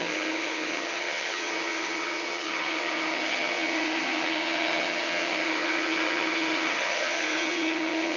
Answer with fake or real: fake